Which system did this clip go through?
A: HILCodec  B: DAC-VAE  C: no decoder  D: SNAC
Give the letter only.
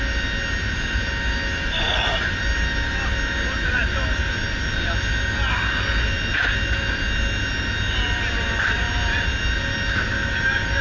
C